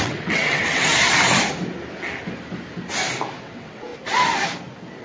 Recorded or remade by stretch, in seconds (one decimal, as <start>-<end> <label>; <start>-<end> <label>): 0.0-0.9 remade; 0.9-3.4 recorded; 3.4-3.9 remade; 3.9-5.0 recorded